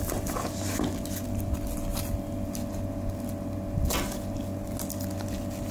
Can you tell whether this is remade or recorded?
recorded